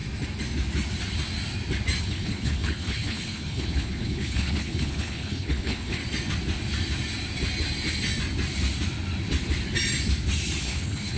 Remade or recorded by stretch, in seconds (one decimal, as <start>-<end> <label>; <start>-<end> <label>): 0.0-2.0 recorded; 2.0-6.0 remade; 6.0-10.6 recorded; 10.6-11.2 remade